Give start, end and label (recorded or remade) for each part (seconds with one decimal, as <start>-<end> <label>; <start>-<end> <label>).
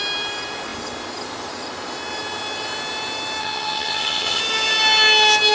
0.0-3.4 recorded; 3.4-4.4 remade; 4.4-5.5 recorded